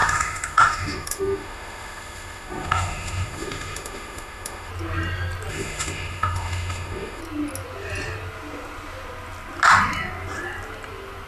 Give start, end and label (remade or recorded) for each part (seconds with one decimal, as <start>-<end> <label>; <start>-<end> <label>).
0.0-4.7 remade; 4.7-5.5 recorded; 5.5-7.2 remade; 7.2-11.3 recorded